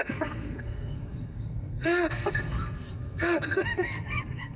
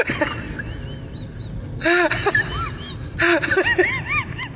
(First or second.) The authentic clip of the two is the second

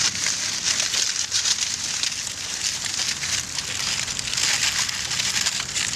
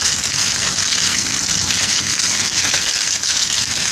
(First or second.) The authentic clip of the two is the first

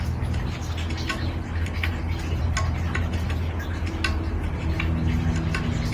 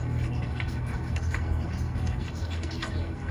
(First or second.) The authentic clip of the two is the first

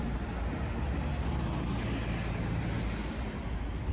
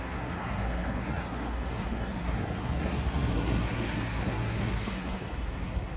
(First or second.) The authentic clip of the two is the first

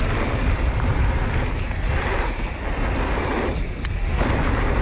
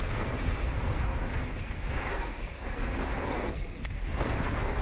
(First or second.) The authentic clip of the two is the first